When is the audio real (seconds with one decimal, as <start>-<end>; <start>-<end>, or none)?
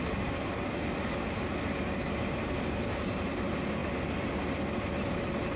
0.0-5.6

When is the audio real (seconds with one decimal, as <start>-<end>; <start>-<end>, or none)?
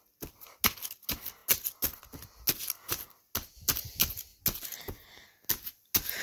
0.0-6.2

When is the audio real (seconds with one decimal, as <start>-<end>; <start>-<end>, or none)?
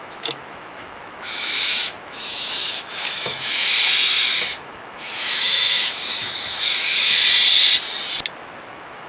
7.2-8.7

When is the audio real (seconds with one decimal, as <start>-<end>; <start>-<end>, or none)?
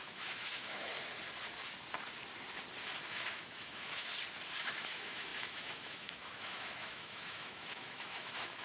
0.9-3.1; 4.1-4.6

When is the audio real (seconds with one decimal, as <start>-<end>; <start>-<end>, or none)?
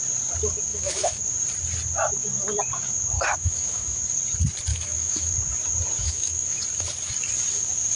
0.0-0.7; 1.2-3.4; 4.0-4.7; 5.3-6.0; 6.6-8.0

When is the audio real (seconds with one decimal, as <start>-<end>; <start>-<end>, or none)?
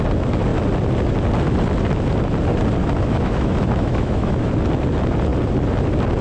0.0-2.8; 4.5-6.2